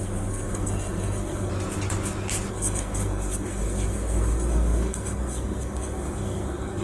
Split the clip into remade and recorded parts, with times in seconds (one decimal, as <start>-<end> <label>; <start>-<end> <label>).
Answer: 0.0-1.5 remade; 1.5-2.5 recorded; 2.5-6.8 remade